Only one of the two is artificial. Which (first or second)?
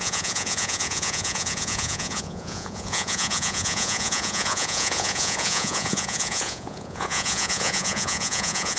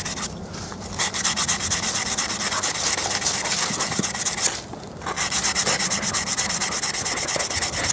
first